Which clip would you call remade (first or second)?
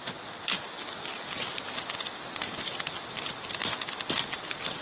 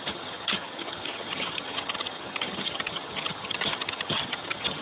second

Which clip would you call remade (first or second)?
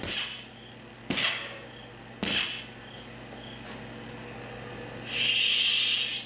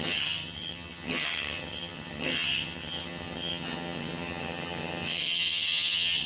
second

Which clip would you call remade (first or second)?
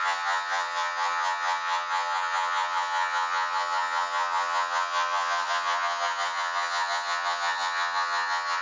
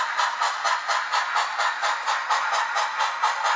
first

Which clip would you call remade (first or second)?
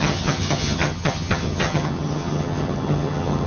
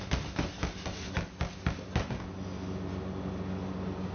first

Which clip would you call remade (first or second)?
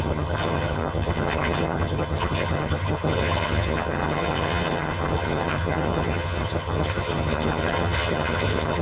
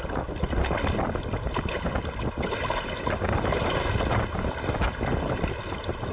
first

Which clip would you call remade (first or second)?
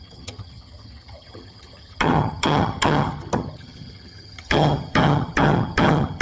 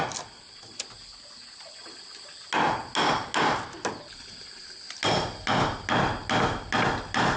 first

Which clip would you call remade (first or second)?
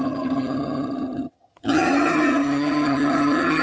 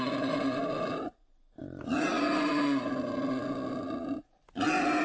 first